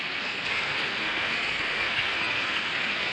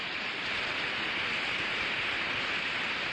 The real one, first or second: second